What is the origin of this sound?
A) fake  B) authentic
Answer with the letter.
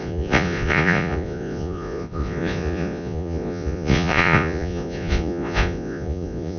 A